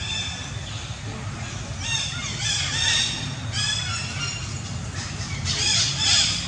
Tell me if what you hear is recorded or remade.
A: recorded